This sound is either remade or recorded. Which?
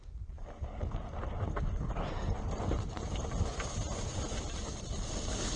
remade